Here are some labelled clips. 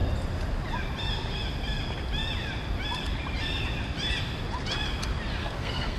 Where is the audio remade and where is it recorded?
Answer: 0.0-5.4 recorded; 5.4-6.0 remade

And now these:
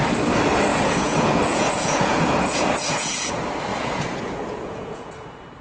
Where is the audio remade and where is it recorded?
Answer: 0.0-0.7 recorded; 0.7-3.3 remade; 3.3-3.7 recorded; 3.7-5.1 remade; 5.1-5.6 recorded